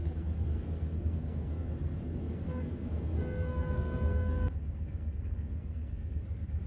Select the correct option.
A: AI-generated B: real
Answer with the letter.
A